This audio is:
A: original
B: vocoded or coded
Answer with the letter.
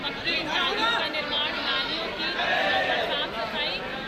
A